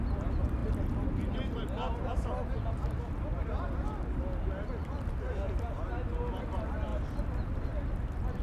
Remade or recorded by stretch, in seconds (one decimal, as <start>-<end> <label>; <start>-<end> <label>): 0.0-8.4 recorded